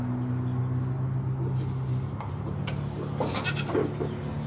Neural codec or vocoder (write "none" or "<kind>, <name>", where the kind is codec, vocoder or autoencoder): none